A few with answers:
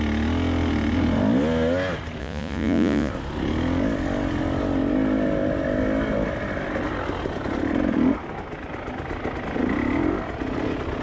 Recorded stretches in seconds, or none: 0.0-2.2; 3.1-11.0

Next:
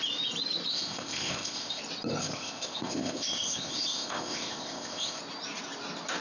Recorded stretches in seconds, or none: 0.0-0.7; 1.8-2.2; 5.2-6.2

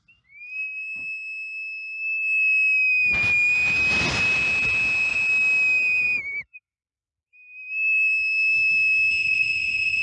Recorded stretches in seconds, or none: 0.0-9.2

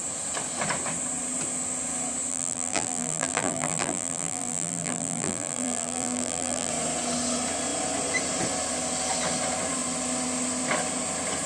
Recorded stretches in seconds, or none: 0.0-2.3; 6.7-11.5

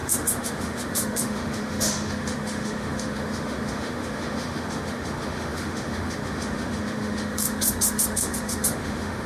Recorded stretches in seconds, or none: none

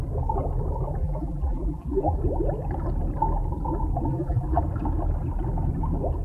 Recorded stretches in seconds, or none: 0.0-1.0; 2.2-4.1; 4.6-6.2

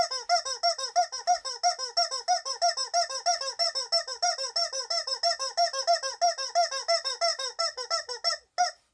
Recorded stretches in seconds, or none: 0.0-8.9

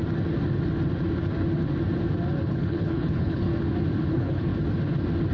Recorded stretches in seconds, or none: 0.0-2.5; 3.5-4.1; 4.5-5.3